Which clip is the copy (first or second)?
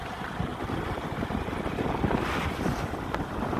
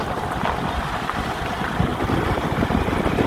second